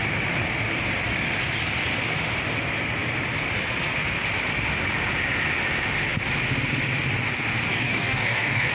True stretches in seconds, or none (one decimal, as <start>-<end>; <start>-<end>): 0.0-7.7